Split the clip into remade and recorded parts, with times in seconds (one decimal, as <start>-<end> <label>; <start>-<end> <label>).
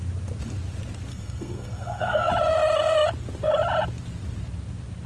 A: 0.0-1.1 recorded; 1.1-2.3 remade; 2.3-5.1 recorded